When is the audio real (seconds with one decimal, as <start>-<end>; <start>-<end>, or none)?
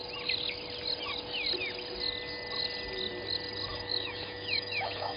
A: 0.0-3.7